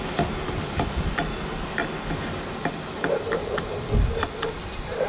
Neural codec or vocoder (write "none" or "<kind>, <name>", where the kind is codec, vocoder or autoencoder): none